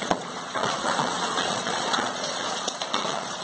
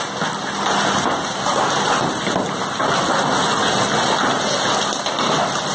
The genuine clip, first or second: second